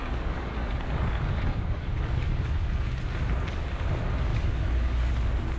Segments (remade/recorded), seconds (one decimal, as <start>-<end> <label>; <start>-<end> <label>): 0.0-2.5 remade; 2.5-4.3 recorded; 4.3-5.1 remade; 5.1-5.6 recorded